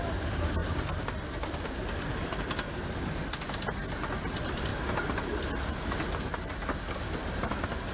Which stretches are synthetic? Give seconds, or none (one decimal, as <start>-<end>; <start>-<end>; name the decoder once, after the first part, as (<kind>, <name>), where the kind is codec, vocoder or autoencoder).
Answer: none